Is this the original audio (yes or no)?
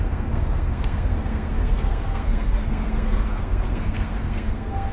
no